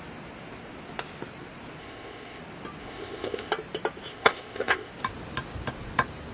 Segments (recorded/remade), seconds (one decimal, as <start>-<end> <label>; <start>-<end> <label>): 0.0-1.8 recorded; 1.8-2.4 remade; 2.4-2.8 recorded; 2.8-3.5 remade; 3.5-4.1 recorded; 4.1-4.9 remade; 4.9-6.3 recorded

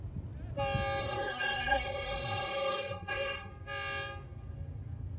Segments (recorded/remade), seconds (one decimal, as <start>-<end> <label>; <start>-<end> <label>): 0.0-1.0 recorded; 1.0-3.5 remade; 3.5-5.2 recorded

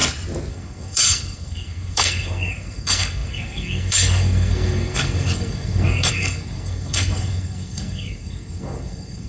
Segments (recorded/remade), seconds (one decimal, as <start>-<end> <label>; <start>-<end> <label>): 0.0-0.5 recorded; 0.5-9.3 remade

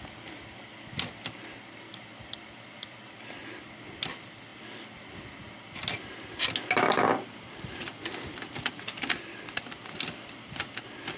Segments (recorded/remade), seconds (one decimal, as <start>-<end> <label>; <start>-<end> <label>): 0.0-11.2 recorded

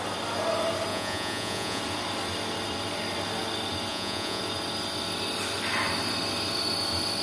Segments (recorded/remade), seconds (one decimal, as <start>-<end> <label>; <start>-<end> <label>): 0.0-0.9 recorded; 0.9-1.8 remade; 1.8-3.9 recorded; 3.9-4.4 remade; 4.4-7.2 recorded

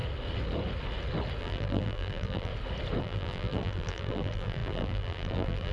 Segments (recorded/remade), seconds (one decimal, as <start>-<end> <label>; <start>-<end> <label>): 0.0-1.4 recorded; 1.4-2.5 remade; 2.5-3.0 recorded; 3.0-5.7 remade

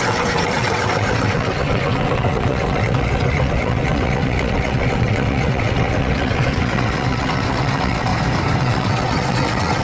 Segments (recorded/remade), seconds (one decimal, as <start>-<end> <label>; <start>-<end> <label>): 0.0-8.1 remade; 8.1-8.6 recorded; 8.6-9.8 remade